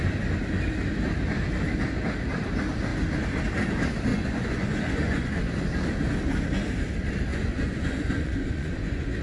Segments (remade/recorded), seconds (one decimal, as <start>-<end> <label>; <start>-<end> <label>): 0.0-4.1 recorded; 4.1-5.4 remade; 5.4-7.3 recorded; 7.3-9.2 remade

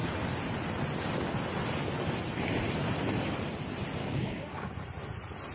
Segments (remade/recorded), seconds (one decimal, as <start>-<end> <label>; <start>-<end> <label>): 0.0-4.0 recorded; 4.0-4.7 remade; 4.7-5.5 recorded

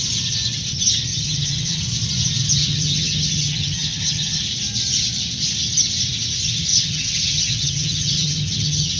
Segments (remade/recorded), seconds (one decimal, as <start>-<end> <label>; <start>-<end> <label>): 0.0-1.1 recorded; 1.1-1.8 remade; 1.8-2.6 recorded; 2.6-4.4 remade; 4.4-6.7 recorded; 6.7-9.0 remade

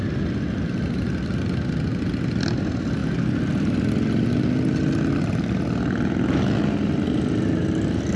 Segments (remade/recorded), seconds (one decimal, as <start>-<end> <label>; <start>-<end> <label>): 0.0-8.2 recorded

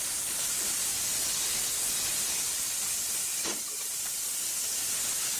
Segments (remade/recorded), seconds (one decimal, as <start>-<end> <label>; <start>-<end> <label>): 0.0-5.4 recorded

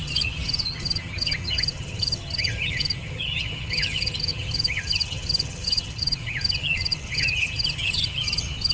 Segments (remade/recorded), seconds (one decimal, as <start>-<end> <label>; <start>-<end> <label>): 0.0-8.7 remade